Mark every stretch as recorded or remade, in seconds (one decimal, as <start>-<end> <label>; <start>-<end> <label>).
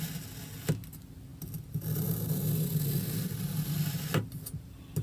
0.0-5.0 recorded